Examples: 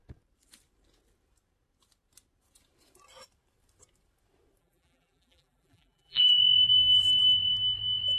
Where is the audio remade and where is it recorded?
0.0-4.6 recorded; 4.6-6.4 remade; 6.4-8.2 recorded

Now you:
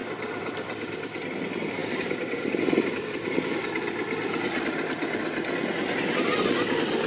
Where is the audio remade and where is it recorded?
0.0-0.9 remade; 0.9-1.8 recorded; 1.8-6.1 remade; 6.1-7.1 recorded

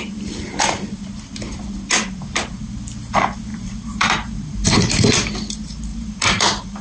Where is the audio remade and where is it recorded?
0.0-3.5 recorded; 3.5-5.5 remade; 5.5-5.9 recorded; 5.9-6.8 remade

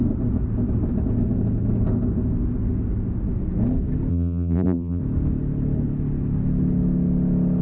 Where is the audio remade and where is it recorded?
0.0-4.1 recorded; 4.1-5.0 remade; 5.0-7.6 recorded

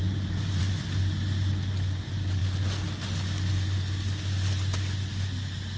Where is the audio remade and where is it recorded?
0.0-5.8 recorded

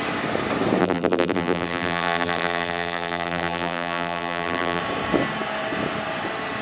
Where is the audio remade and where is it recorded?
0.0-0.8 recorded; 0.8-4.8 remade; 4.8-6.6 recorded